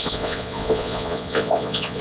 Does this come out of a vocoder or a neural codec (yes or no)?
yes